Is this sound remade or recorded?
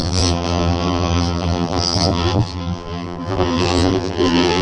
remade